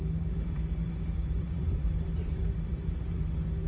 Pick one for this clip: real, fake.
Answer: fake